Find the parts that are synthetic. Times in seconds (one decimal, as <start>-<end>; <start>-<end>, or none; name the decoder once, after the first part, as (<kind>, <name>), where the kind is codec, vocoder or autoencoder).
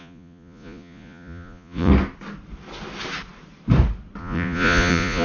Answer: 0.0-1.9 (vocoder, Vocos); 4.2-5.2